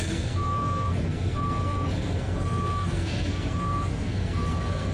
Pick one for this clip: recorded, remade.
remade